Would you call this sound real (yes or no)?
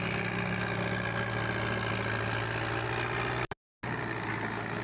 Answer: yes